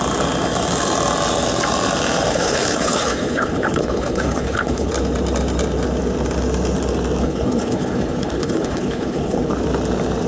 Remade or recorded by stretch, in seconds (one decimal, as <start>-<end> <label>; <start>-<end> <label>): 0.0-2.3 recorded; 2.3-4.9 remade; 4.9-7.2 recorded; 7.2-9.5 remade; 9.5-10.3 recorded